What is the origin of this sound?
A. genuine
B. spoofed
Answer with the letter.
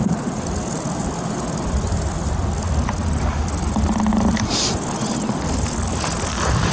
A